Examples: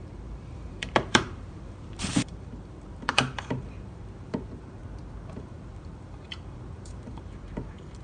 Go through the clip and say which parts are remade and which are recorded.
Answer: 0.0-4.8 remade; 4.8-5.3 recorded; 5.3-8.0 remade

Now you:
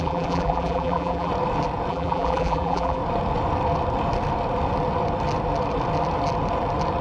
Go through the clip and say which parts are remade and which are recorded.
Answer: 0.0-1.3 remade; 1.3-1.9 recorded; 1.9-3.0 remade; 3.0-7.0 recorded

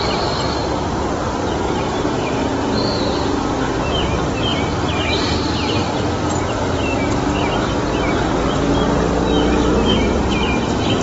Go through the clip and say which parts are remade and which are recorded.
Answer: 0.0-11.0 recorded

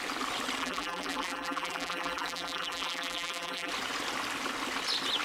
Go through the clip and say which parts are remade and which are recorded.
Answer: 0.0-0.6 recorded; 0.6-3.7 remade; 3.7-5.2 recorded

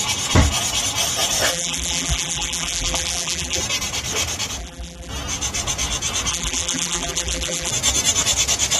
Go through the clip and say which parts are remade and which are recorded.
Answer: 0.0-1.5 recorded; 1.5-3.6 remade; 3.6-4.6 recorded; 4.6-5.1 remade; 5.1-6.3 recorded; 6.3-7.7 remade; 7.7-8.8 recorded

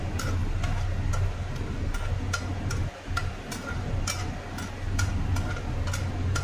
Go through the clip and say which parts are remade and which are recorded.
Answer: 0.0-6.4 recorded

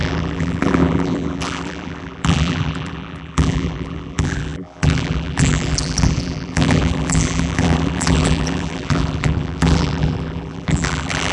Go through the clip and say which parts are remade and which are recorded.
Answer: 0.0-11.3 remade

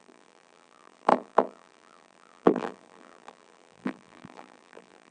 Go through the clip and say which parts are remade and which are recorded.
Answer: 0.0-5.1 remade